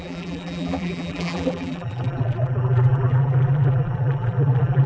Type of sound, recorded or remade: remade